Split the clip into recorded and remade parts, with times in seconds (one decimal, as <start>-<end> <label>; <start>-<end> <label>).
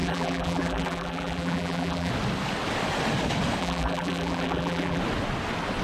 0.0-2.1 remade; 2.1-3.6 recorded; 3.6-5.0 remade; 5.0-5.8 recorded